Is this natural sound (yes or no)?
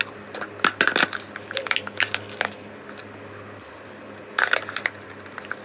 yes